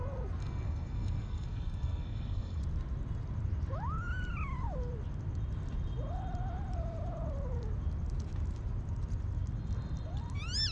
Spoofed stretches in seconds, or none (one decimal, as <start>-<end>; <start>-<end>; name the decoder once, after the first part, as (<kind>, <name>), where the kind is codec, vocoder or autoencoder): 0.4-2.6 (codec, SNAC)